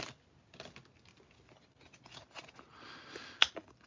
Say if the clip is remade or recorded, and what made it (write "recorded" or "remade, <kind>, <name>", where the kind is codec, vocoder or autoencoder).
recorded